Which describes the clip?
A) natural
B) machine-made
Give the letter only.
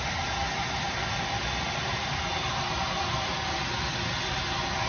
A